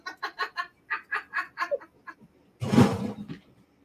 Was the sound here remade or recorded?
recorded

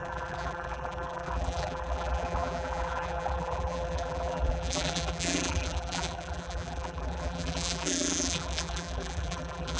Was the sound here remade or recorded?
remade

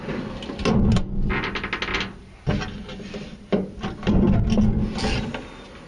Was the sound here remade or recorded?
recorded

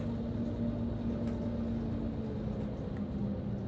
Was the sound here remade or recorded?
recorded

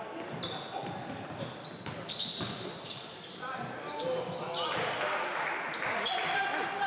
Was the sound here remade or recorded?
recorded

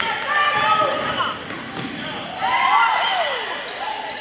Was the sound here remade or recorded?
recorded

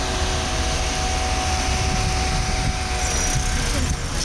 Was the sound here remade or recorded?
recorded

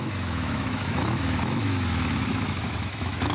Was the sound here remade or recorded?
remade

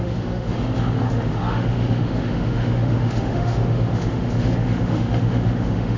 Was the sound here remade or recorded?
remade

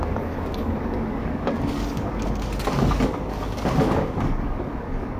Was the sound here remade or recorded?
remade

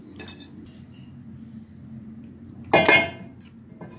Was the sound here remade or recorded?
recorded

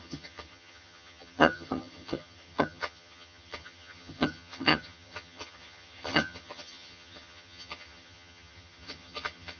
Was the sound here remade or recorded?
remade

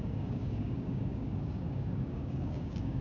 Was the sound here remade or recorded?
remade